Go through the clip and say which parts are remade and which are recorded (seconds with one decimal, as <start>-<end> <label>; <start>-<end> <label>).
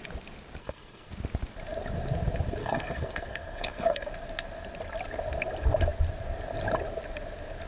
0.0-0.6 recorded; 0.6-1.1 remade; 1.1-2.6 recorded; 2.6-4.1 remade; 4.1-7.7 recorded